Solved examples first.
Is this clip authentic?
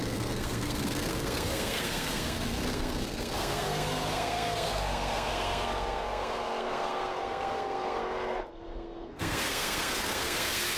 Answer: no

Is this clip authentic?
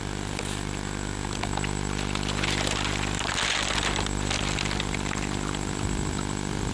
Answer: yes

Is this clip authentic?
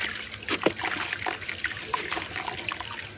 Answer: yes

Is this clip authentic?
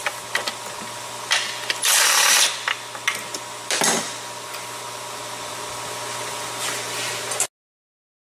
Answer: yes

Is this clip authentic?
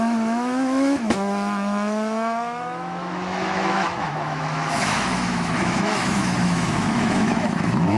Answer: no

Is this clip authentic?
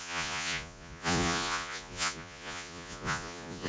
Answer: no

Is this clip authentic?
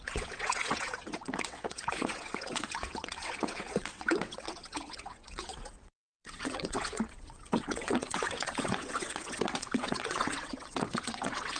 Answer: no